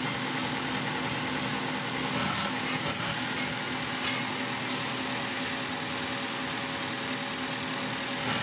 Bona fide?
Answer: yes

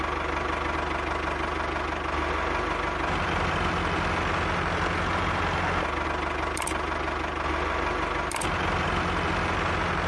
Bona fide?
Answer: yes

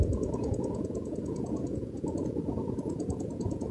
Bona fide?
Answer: no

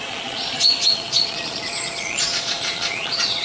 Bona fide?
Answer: no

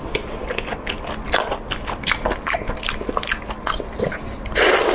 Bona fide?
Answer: yes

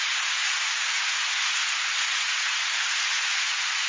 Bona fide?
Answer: no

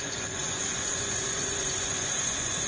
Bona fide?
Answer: no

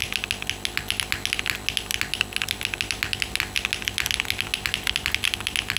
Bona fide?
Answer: yes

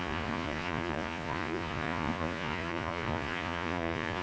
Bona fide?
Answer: no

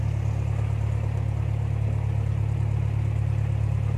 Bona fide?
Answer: yes